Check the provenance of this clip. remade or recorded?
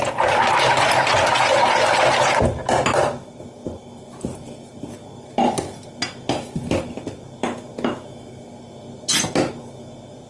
recorded